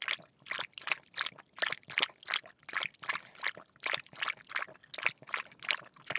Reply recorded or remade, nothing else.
recorded